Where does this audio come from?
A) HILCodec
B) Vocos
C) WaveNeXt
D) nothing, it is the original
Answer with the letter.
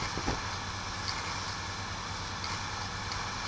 D